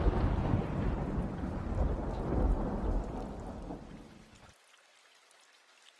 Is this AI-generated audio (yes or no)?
no